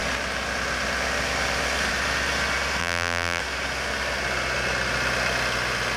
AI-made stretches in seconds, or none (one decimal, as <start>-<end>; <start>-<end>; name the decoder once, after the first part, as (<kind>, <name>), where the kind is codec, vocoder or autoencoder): 2.8-3.4 (vocoder, BigVGAN v2)